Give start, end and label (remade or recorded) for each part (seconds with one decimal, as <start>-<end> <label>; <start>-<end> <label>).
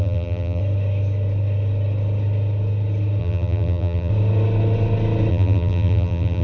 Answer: 0.0-0.6 remade; 0.6-3.2 recorded; 3.2-4.1 remade; 4.1-5.3 recorded; 5.3-6.4 remade